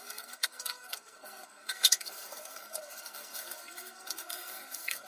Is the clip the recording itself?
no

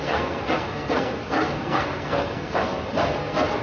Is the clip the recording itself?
no